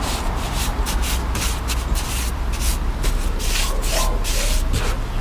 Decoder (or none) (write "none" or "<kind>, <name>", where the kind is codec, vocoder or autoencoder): none